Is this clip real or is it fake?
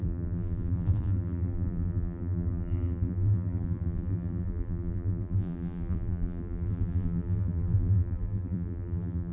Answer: fake